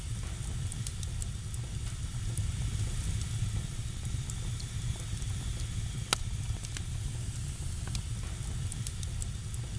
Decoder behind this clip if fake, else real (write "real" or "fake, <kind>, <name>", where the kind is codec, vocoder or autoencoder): real